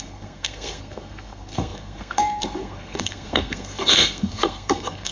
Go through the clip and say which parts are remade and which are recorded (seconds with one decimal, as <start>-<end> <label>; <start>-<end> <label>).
0.0-5.1 remade